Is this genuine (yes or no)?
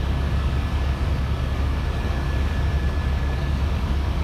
no